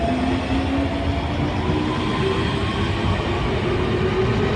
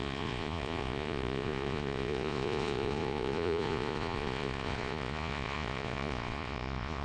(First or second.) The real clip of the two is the first